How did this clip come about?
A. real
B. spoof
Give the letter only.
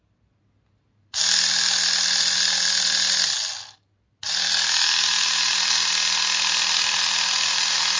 A